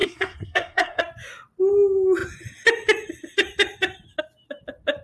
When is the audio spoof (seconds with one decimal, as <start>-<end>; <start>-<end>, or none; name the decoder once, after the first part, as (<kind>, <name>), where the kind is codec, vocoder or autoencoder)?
0.0-1.0 (codec, SNAC)